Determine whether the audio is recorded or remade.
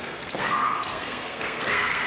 remade